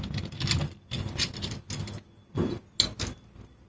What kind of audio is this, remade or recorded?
recorded